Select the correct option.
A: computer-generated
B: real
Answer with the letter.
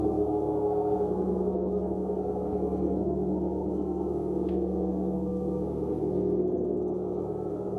A